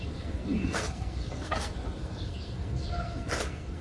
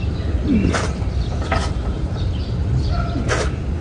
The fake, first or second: first